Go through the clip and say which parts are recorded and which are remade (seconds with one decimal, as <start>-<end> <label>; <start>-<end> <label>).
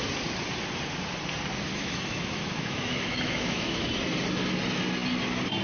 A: 0.0-1.7 recorded; 1.7-3.9 remade; 3.9-5.6 recorded